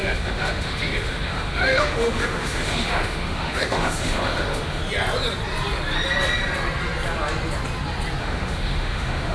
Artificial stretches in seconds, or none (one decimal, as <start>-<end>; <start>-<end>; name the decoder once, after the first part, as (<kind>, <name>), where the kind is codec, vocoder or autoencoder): 0.0-4.8 (autoencoder, DAC-VAE); 8.2-9.3